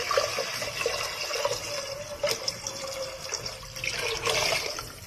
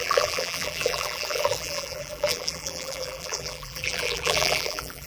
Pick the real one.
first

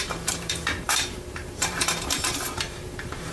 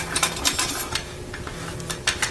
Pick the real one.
second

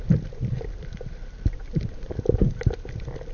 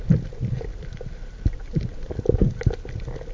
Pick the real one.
second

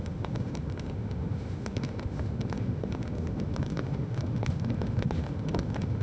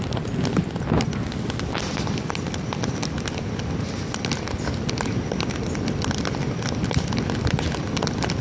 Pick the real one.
second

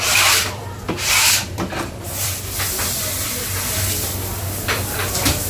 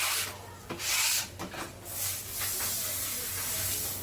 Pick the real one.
second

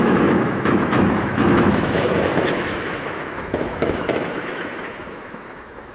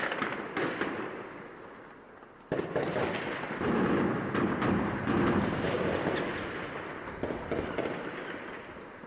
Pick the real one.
second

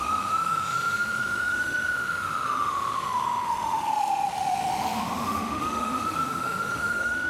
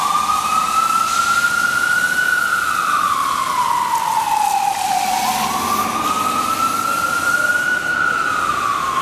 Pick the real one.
second